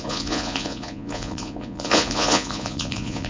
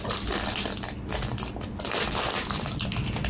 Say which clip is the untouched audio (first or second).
second